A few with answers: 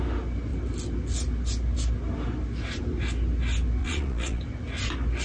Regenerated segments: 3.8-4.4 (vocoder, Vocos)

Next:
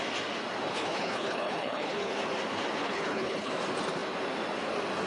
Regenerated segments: 0.7-2.1 (codec, HILCodec); 2.8-3.5

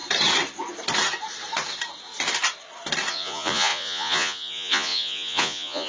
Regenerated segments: 3.1-5.9 (vocoder, Vocos)

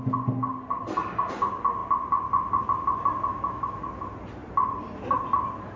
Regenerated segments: 3.3-3.8 (autoencoder, DAC-VAE)

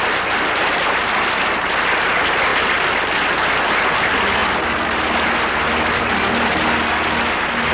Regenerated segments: none